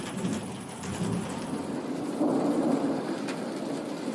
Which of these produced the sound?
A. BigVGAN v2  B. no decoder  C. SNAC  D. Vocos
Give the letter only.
B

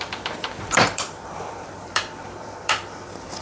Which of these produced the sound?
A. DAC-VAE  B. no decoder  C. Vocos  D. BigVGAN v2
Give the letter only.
D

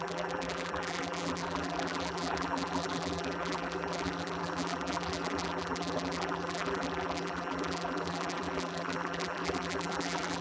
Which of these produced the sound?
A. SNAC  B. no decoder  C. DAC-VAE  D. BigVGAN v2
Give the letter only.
D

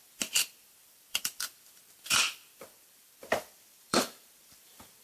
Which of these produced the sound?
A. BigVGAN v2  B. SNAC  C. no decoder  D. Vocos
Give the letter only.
A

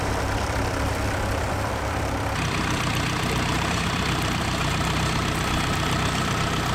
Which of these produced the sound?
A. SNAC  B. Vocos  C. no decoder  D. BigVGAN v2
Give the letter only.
D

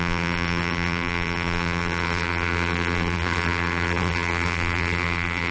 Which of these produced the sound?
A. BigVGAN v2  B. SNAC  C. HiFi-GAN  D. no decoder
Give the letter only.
A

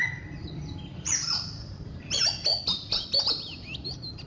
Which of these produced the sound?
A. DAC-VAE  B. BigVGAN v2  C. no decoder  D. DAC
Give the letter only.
B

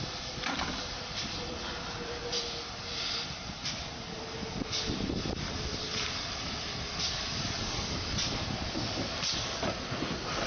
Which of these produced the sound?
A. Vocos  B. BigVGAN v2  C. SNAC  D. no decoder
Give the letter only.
B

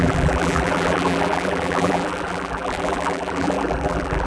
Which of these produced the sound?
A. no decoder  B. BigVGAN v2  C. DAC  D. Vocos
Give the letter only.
B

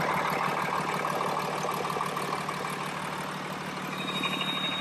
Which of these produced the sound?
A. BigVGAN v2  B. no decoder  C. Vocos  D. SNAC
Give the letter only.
B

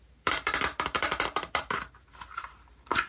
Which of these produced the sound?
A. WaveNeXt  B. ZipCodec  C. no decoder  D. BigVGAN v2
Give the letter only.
D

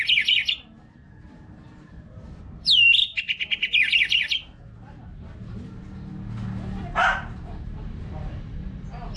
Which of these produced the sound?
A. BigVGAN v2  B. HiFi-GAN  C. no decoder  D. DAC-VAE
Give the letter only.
C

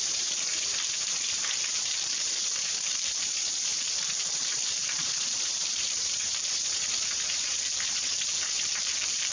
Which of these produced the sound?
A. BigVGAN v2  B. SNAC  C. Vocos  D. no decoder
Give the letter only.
A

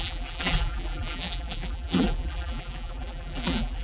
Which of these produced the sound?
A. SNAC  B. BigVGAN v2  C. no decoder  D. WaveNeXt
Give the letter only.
B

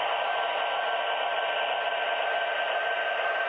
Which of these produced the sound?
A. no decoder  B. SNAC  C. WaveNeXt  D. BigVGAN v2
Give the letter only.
A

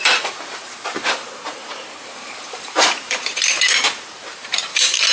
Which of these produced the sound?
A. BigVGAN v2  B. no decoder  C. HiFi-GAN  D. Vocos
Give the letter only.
A